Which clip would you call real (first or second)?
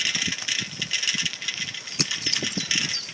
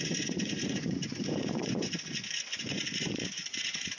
first